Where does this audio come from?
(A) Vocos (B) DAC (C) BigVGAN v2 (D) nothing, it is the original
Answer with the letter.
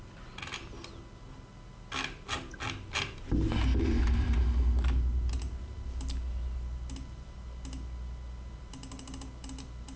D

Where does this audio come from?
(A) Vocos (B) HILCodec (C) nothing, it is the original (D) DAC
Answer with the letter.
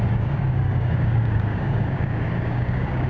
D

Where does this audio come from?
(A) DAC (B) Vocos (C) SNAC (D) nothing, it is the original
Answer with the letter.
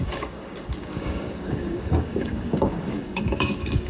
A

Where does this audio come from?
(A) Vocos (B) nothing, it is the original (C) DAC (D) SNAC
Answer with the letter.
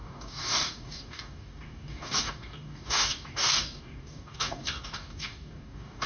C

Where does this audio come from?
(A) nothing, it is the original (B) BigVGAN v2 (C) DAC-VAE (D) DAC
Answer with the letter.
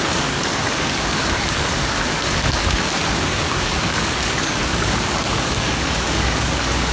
D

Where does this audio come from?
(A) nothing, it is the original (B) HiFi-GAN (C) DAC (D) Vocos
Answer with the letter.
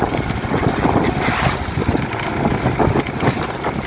A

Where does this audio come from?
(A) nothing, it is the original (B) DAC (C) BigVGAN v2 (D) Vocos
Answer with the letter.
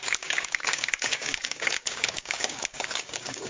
B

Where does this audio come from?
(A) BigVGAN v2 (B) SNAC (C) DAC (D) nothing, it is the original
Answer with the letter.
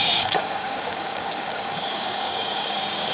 C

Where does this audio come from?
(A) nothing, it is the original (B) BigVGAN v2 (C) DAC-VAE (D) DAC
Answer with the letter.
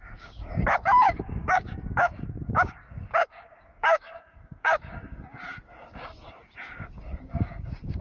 D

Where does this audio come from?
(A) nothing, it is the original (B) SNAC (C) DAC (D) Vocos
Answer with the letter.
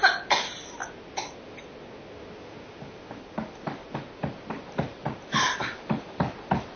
A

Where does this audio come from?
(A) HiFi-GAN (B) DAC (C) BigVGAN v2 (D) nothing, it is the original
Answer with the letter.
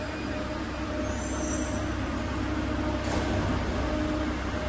D